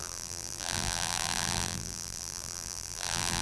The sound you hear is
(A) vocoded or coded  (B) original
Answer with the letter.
A